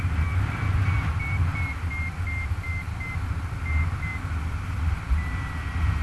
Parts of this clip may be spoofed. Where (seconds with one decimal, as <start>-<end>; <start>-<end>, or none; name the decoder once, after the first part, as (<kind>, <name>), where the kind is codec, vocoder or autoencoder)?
none